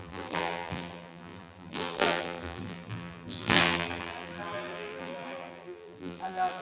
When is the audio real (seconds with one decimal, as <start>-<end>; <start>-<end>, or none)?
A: none